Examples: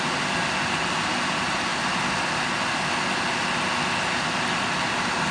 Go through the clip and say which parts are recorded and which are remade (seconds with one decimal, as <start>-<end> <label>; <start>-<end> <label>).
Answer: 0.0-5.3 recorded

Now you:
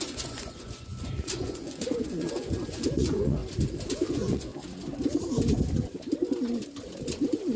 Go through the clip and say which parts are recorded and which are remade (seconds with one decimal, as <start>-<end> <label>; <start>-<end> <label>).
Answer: 0.0-3.4 remade; 3.4-4.1 recorded; 4.1-4.5 remade; 4.5-7.6 recorded

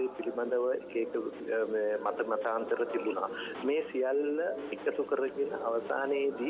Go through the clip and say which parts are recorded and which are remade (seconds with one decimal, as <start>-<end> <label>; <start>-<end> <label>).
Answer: 0.0-6.5 recorded

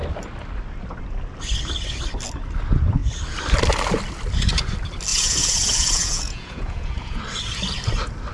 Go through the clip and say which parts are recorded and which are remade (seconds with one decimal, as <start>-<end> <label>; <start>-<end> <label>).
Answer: 0.0-5.1 recorded; 5.1-7.2 remade; 7.2-8.3 recorded

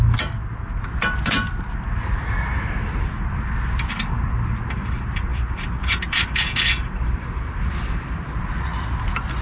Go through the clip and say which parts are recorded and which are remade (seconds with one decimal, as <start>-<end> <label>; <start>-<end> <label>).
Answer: 0.0-9.4 recorded

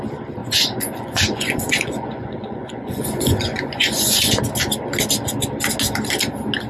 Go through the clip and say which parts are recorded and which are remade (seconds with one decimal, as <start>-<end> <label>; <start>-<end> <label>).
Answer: 0.0-0.4 recorded; 0.4-4.4 remade; 4.4-6.7 recorded